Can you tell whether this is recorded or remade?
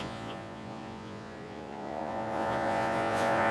remade